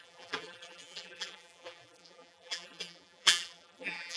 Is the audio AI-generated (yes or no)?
yes